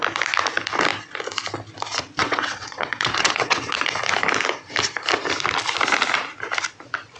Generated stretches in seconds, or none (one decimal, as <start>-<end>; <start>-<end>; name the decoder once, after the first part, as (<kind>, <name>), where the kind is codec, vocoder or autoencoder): 2.2-4.0 (vocoder, WaveNeXt)